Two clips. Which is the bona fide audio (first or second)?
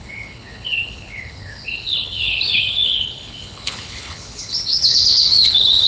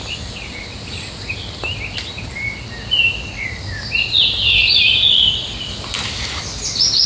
second